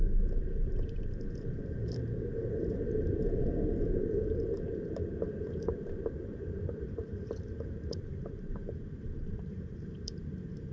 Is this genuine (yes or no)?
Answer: no